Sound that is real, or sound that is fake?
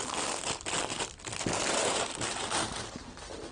real